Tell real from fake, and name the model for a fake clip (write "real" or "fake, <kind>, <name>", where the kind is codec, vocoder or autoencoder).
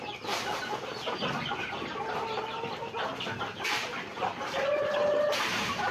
real